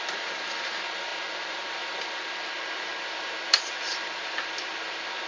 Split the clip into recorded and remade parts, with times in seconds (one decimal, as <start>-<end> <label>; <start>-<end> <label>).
0.0-5.3 recorded